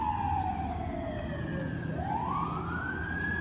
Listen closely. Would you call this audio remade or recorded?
recorded